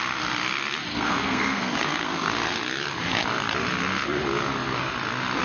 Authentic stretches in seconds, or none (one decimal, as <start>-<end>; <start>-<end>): 0.0-0.9; 2.3-5.4